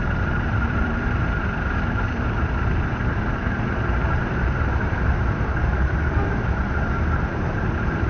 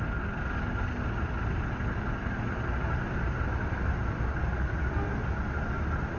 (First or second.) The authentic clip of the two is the second